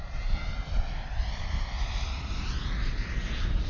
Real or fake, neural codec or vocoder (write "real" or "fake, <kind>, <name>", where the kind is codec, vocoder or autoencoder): real